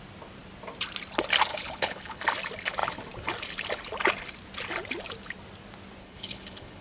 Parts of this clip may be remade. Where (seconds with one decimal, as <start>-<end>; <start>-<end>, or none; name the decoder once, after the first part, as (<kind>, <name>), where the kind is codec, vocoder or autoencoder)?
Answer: 1.5-2.2 (codec, HILCodec); 6.0-6.8